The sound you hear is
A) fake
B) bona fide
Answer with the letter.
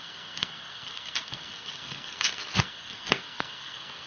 A